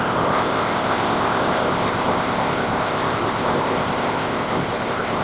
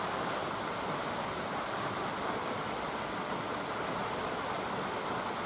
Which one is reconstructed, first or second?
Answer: first